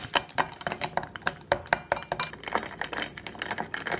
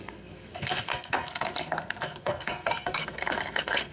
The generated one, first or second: second